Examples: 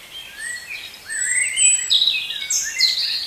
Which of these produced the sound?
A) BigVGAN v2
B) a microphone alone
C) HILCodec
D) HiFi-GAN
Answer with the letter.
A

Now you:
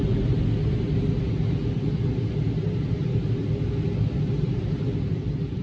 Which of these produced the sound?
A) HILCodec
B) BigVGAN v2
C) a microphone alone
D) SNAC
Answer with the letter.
C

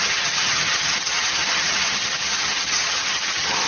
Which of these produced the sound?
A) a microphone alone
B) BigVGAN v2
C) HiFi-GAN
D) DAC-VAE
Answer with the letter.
C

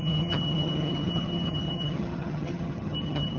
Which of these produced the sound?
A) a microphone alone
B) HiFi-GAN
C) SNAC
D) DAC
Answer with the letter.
B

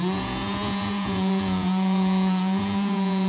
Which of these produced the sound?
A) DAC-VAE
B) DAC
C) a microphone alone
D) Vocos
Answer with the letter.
D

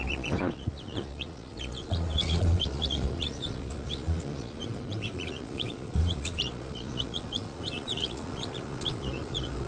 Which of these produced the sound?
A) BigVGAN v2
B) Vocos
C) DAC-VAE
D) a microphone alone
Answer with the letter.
B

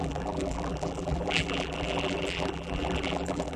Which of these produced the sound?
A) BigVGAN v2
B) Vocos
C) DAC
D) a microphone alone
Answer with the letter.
A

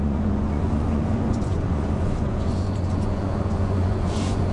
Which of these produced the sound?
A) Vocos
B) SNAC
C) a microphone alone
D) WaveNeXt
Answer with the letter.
A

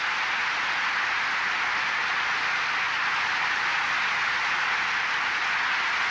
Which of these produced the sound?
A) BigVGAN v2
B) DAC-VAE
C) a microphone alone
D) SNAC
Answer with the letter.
C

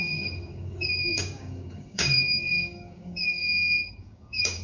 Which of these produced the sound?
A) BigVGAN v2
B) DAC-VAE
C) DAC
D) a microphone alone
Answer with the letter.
C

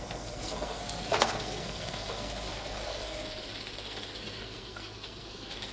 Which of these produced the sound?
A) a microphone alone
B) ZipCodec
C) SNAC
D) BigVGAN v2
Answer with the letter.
C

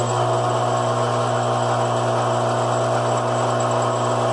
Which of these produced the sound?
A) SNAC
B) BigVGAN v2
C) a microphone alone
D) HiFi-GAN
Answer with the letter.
C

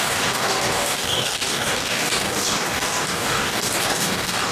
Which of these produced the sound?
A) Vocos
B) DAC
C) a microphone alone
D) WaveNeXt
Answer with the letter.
B